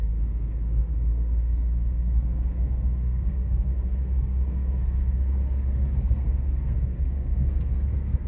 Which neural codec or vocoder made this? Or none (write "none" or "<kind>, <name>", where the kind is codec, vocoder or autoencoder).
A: codec, SNAC